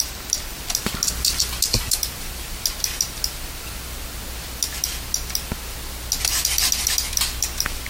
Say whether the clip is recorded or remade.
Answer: recorded